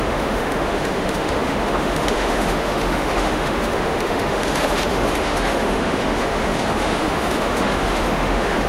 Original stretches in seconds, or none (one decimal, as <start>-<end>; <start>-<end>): none